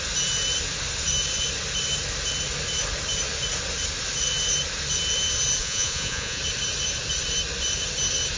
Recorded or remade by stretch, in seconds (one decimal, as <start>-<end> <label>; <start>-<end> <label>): 0.0-5.6 recorded; 5.6-6.4 remade; 6.4-8.4 recorded